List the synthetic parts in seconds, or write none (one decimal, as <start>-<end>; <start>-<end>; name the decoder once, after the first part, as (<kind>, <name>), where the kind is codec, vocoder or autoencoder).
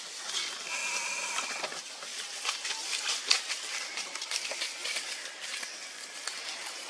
none